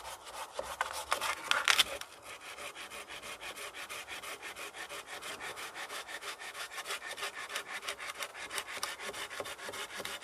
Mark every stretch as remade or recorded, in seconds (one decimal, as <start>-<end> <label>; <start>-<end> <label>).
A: 0.0-5.5 recorded; 5.5-6.7 remade; 6.7-10.2 recorded